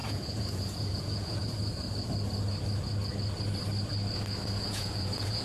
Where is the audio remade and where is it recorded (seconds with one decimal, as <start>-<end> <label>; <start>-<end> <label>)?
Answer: 0.0-1.4 remade; 1.4-4.6 recorded; 4.6-5.4 remade